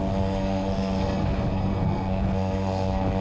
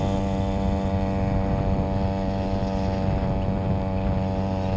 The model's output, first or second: first